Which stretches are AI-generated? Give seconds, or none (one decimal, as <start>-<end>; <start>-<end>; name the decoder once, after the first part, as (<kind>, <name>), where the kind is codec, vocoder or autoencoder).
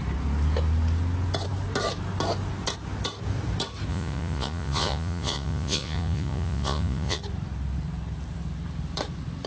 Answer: 3.9-7.2 (vocoder, Vocos)